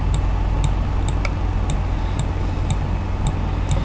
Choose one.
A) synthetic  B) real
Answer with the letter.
B